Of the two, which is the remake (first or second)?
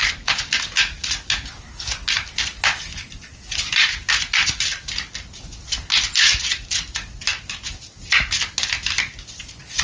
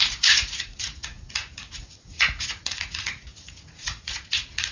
second